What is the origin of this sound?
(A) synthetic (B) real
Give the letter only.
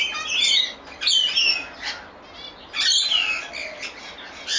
B